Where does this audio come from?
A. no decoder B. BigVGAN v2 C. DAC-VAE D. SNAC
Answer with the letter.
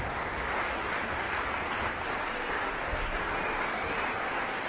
A